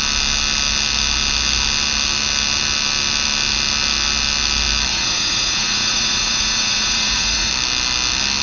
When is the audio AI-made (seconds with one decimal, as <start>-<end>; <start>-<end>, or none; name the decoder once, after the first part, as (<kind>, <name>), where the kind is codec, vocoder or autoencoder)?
4.9-7.5 (vocoder, Vocos)